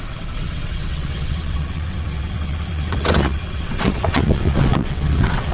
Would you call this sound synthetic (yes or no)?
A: yes